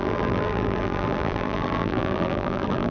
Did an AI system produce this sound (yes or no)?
yes